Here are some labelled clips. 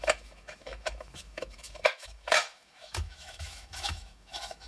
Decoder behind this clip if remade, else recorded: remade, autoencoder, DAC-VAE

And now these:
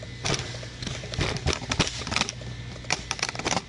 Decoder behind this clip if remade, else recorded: recorded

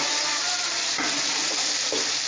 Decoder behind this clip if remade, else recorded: recorded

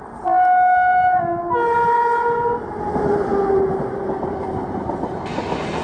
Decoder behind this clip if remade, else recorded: recorded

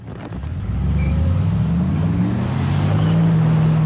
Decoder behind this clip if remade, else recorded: recorded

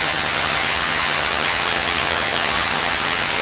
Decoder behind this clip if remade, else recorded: remade, vocoder, HiFi-GAN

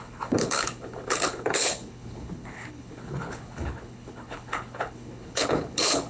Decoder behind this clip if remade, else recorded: remade, codec, HILCodec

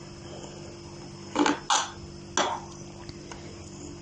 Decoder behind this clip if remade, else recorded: recorded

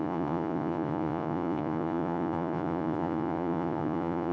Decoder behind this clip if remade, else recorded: remade, vocoder, Vocos